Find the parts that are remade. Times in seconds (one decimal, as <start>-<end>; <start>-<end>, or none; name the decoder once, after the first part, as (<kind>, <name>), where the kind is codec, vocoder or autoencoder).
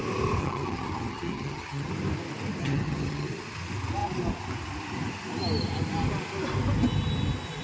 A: 0.4-1.9 (vocoder, HiFi-GAN); 2.6-3.3